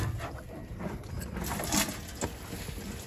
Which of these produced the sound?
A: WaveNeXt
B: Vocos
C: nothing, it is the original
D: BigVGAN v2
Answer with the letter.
C